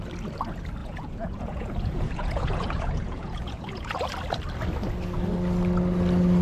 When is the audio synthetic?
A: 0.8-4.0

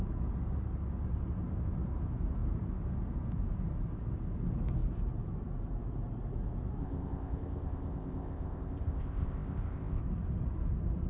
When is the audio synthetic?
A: 6.8-10.0

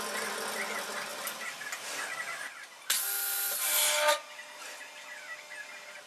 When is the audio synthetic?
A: 1.1-1.8

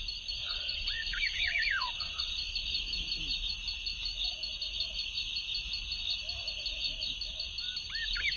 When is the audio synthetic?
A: 0.4-2.5